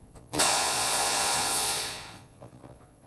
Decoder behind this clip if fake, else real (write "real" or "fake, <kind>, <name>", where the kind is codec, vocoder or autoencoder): fake, vocoder, Vocos